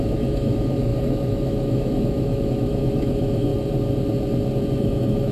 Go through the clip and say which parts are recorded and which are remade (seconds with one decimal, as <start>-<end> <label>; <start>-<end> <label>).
0.0-3.5 remade; 3.5-4.8 recorded; 4.8-5.3 remade